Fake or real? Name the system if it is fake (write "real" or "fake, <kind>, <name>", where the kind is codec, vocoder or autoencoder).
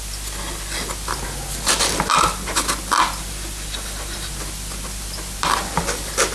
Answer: real